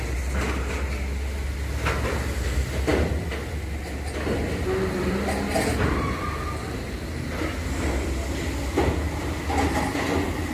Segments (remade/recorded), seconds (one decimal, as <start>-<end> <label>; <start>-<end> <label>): 0.0-10.5 recorded